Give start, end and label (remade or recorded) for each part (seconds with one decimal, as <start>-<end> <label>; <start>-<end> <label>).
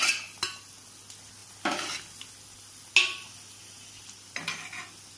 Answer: 0.0-5.2 recorded